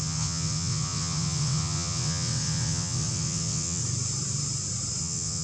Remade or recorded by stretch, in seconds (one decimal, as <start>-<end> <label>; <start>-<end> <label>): 0.0-3.8 remade; 3.8-5.0 recorded; 5.0-5.4 remade